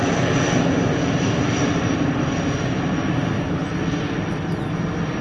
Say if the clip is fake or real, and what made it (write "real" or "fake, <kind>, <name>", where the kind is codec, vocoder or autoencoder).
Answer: real